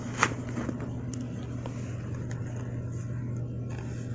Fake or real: real